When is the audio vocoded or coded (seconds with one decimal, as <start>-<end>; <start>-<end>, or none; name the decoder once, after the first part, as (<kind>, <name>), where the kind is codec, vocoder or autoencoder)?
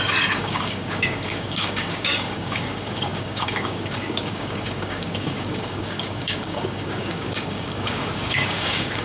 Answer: 0.0-9.0 (codec, DAC)